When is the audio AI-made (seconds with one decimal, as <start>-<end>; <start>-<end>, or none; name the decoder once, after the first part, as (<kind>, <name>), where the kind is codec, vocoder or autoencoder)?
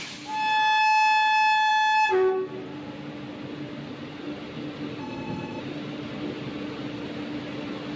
5.0-5.6 (codec, ZipCodec)